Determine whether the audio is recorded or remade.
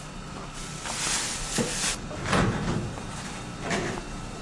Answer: recorded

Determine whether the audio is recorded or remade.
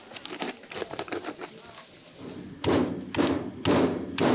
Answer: recorded